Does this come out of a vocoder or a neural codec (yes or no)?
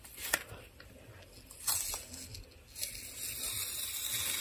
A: no